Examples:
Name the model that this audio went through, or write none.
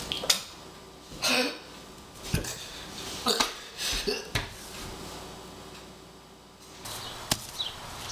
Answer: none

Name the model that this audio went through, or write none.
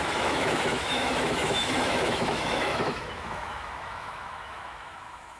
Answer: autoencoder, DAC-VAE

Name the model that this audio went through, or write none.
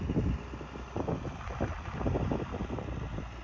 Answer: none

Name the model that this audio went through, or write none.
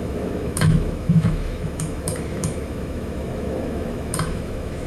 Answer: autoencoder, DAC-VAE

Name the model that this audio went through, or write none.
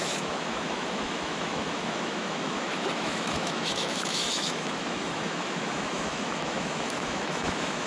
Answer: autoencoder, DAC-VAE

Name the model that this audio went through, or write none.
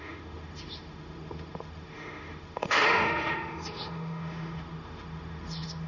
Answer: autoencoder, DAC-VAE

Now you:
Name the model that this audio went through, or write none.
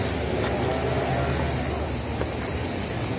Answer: none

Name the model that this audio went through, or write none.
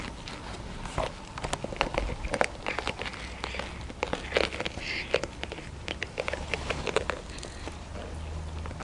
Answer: none